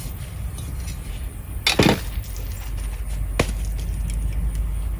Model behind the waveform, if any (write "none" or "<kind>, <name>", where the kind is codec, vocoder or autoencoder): none